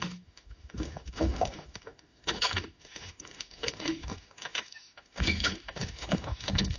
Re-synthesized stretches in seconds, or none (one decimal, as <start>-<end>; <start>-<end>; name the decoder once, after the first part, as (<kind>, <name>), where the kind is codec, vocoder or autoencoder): 0.0-6.8 (autoencoder, DAC-VAE)